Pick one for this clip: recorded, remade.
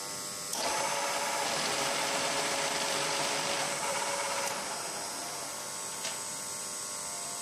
remade